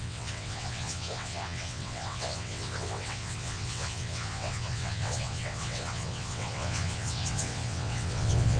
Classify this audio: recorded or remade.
remade